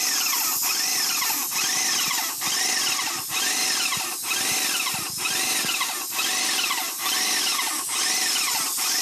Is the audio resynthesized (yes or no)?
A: no